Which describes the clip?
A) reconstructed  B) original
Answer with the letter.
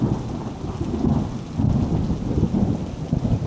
B